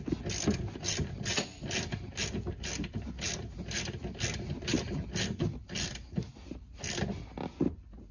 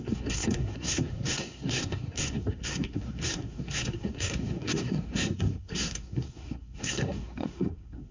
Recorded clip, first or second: first